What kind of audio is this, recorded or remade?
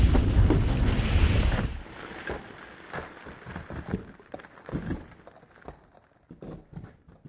recorded